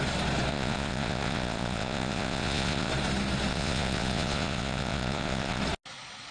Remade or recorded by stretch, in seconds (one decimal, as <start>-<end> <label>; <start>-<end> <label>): 0.0-0.5 recorded; 0.5-2.9 remade; 2.9-3.5 recorded; 3.5-5.6 remade; 5.6-6.3 recorded